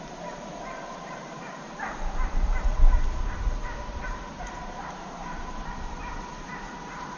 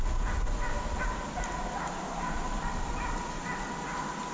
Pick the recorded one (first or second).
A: second